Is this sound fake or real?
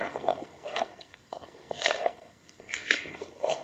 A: fake